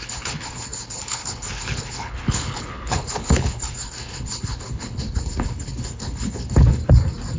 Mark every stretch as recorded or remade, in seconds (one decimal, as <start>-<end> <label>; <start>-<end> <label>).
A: 0.0-6.8 remade; 6.8-7.4 recorded